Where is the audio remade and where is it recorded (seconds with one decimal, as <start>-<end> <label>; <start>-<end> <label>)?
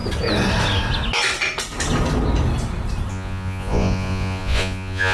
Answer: 0.0-3.1 recorded; 3.1-5.1 remade